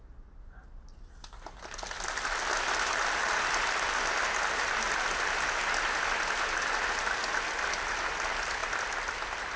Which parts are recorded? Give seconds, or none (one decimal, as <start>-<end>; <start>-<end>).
0.0-9.6